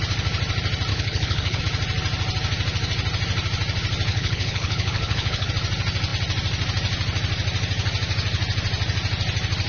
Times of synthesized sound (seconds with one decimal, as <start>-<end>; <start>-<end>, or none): 0.9-1.6; 4.1-5.5